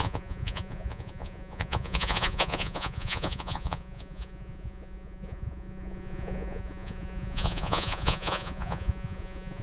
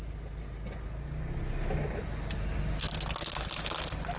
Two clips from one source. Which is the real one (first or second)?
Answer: second